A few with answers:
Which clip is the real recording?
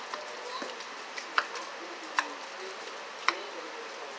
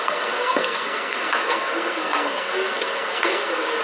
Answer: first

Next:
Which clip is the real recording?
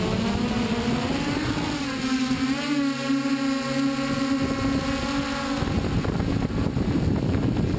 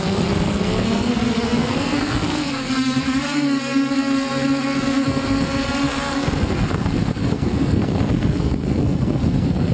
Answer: first